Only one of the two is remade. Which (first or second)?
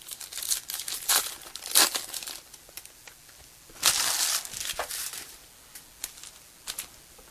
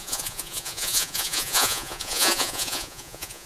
second